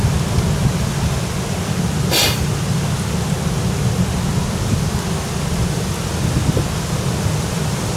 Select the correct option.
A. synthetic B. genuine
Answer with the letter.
B